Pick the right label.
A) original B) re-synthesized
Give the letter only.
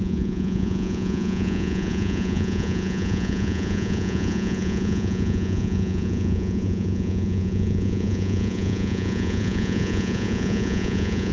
B